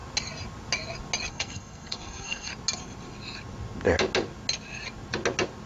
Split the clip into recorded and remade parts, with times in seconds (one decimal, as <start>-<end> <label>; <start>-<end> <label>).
0.0-1.3 recorded; 1.3-2.5 remade; 2.5-5.7 recorded